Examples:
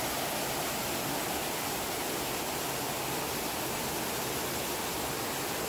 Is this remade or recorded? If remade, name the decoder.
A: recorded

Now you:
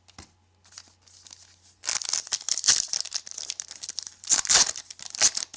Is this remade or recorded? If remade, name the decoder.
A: recorded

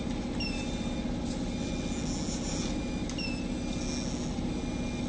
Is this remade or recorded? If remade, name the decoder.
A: recorded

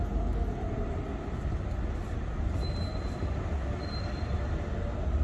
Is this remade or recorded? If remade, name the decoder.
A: recorded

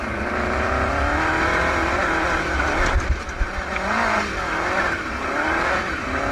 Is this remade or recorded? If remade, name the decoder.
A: recorded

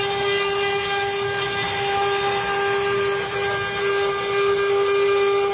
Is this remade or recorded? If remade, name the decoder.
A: recorded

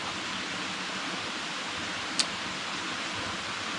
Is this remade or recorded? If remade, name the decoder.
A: recorded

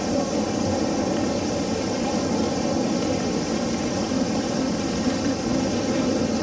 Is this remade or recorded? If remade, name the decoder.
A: recorded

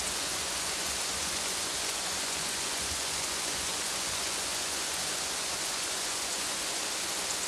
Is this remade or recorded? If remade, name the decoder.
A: remade, vocoder, Vocos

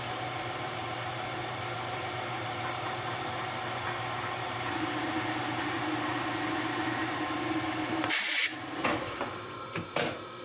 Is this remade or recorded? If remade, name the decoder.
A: remade, vocoder, BigVGAN v2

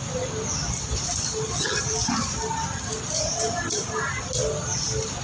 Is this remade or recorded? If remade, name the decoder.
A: recorded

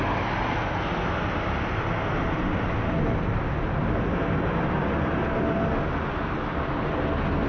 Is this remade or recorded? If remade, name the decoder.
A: recorded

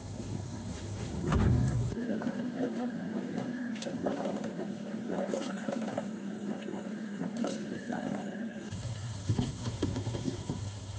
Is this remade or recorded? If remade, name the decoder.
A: remade, codec, SNAC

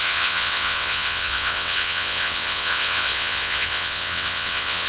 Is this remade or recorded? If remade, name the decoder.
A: remade, vocoder, WaveNeXt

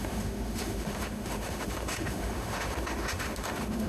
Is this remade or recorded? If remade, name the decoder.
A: remade, autoencoder, DAC-VAE